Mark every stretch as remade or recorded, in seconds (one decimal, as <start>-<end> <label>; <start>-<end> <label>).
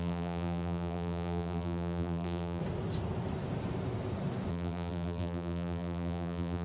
0.0-2.6 remade; 2.6-4.5 recorded; 4.5-6.6 remade